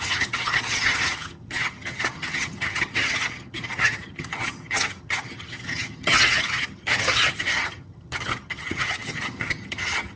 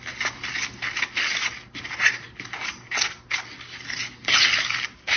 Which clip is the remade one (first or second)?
first